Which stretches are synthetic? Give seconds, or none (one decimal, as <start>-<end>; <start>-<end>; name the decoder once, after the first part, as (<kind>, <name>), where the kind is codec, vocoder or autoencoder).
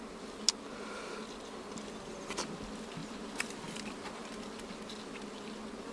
none